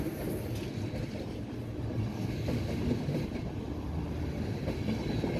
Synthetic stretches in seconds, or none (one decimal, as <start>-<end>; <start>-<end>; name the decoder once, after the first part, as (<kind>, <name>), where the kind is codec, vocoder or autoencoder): 2.1-2.8 (codec, DAC)